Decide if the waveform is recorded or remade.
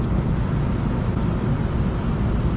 recorded